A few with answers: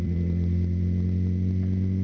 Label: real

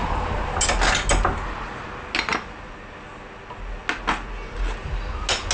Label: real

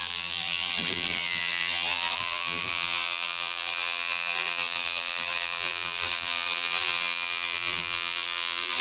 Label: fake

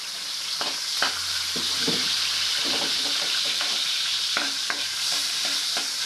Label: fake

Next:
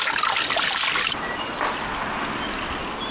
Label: real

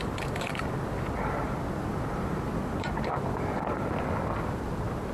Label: fake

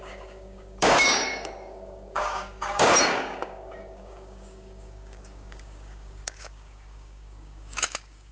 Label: fake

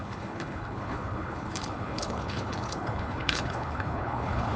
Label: fake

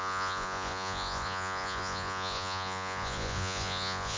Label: fake